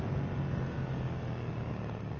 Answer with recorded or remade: recorded